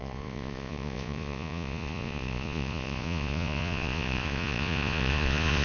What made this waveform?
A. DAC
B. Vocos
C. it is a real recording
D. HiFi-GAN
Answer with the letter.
B